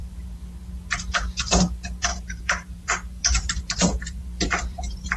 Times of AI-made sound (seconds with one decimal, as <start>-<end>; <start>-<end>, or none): 0.0-0.8; 2.1-5.2